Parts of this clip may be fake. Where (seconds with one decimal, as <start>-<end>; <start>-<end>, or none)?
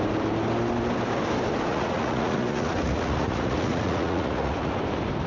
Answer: 1.7-4.7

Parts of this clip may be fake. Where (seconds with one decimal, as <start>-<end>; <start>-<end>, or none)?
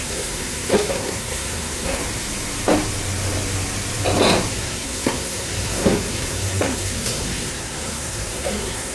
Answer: 0.0-2.0; 4.5-8.9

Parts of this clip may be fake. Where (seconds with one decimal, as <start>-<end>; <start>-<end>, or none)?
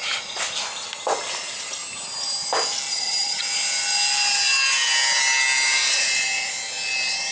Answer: 2.9-3.4